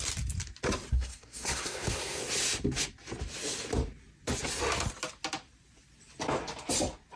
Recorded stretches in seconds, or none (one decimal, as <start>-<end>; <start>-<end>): 0.0-0.9; 2.2-7.2